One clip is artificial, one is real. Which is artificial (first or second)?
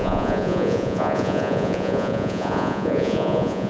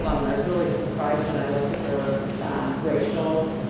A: first